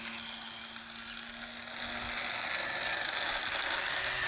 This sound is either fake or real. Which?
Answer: real